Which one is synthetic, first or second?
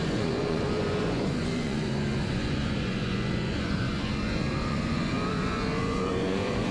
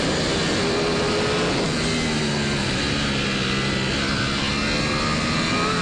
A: first